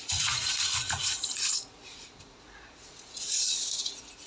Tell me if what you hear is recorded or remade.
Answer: remade